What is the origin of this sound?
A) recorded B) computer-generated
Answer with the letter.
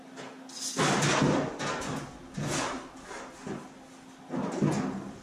A